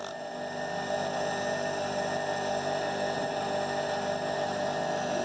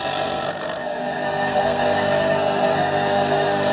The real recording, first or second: first